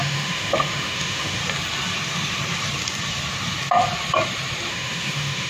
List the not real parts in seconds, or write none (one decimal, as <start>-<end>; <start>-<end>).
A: 0.0-1.4; 4.7-5.5